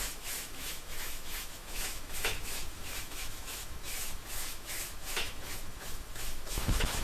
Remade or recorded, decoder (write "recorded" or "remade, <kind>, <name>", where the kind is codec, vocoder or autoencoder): remade, autoencoder, DAC-VAE